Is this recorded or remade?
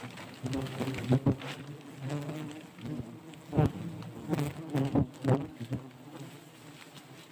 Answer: recorded